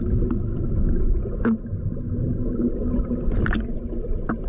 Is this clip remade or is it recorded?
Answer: recorded